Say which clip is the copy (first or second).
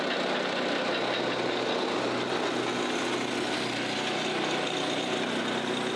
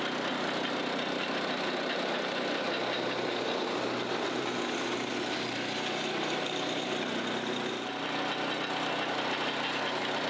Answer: second